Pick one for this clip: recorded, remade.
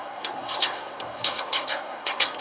remade